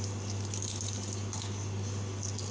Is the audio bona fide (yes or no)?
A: yes